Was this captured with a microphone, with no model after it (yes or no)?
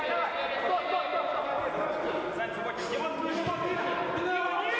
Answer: yes